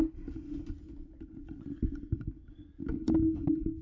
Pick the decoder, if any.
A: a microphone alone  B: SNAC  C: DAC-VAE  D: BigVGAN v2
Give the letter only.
A